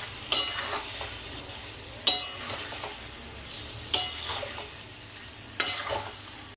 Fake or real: real